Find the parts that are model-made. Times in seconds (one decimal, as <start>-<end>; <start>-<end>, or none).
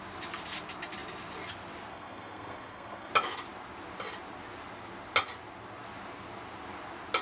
1.9-3.1